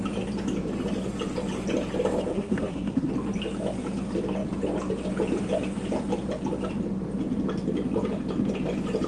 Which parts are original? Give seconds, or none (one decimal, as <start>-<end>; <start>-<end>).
0.0-2.3; 3.1-9.1